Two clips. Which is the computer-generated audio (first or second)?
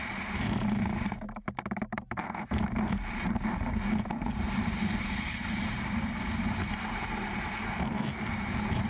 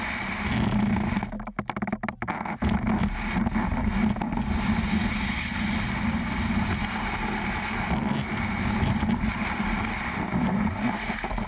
first